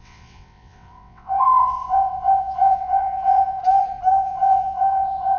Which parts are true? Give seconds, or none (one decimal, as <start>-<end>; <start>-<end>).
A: 3.6-4.1